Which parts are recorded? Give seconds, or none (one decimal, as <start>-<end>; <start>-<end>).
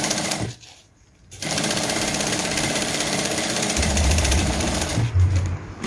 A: 4.9-5.9